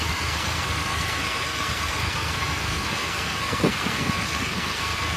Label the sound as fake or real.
fake